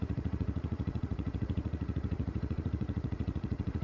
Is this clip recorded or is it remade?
remade